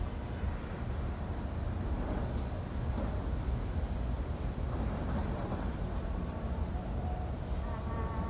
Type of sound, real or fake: real